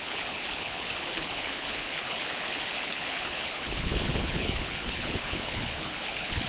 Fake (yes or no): yes